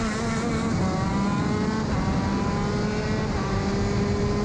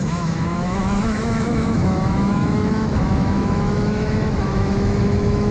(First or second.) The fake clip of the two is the second